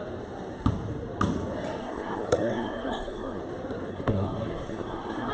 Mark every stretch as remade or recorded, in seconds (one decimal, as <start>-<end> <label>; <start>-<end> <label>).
0.0-1.8 recorded; 1.8-3.4 remade; 3.4-3.9 recorded; 3.9-5.3 remade